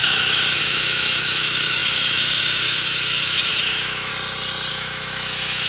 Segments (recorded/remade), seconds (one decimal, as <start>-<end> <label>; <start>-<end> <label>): 0.0-4.1 remade; 4.1-4.7 recorded; 4.7-5.7 remade